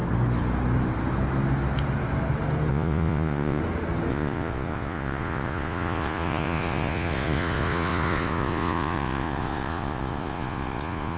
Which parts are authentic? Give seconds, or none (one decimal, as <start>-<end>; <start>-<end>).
0.0-2.7; 3.6-4.1